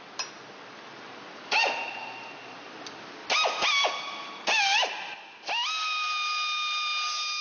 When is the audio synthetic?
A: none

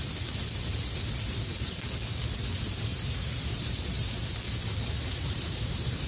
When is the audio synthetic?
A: 2.9-4.2 (vocoder, BigVGAN v2); 4.7-6.1

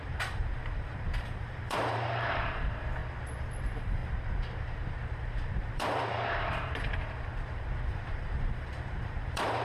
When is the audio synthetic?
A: 0.0-3.0 (vocoder, BigVGAN v2); 3.6-4.0; 4.9-9.6

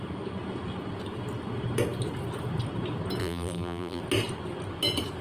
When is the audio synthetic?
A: 3.2-4.0 (vocoder, BigVGAN v2)